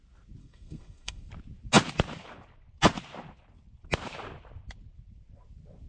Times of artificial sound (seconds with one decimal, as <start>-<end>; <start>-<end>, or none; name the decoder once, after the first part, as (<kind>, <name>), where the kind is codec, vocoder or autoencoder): 0.4-1.3 (codec, SNAC)

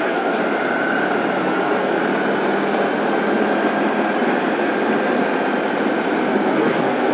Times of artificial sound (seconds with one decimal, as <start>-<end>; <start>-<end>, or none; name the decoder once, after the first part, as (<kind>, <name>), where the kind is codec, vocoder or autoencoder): 0.0-0.4 (codec, SNAC); 1.4-2.0; 6.2-7.1

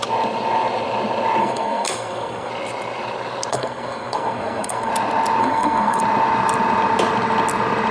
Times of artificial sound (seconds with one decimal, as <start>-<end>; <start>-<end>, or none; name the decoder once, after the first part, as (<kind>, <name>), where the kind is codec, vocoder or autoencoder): 1.4-2.5 (codec, SNAC); 3.5-4.9; 5.4-6.0

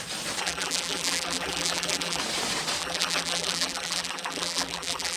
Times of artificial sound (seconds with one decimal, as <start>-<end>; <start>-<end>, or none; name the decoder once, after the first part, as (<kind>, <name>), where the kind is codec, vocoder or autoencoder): 0.4-2.2 (vocoder, BigVGAN v2); 2.8-5.2

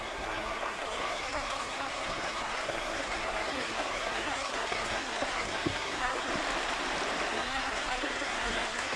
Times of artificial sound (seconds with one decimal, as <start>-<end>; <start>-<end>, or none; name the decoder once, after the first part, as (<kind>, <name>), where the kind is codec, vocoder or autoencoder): 0.0-6.3 (codec, SNAC); 7.3-9.0

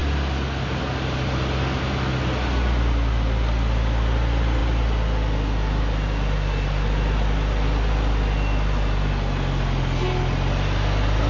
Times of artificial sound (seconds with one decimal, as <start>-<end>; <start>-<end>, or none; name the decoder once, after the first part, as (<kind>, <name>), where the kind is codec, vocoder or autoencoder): none

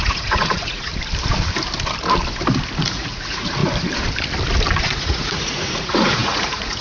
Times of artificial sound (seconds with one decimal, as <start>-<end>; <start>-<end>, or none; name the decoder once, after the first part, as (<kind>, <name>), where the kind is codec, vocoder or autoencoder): 0.0-0.9 (vocoder, Vocos); 2.8-3.6; 4.8-6.8